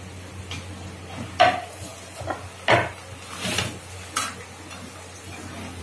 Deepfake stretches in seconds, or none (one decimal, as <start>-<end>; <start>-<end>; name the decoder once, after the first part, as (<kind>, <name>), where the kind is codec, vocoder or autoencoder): none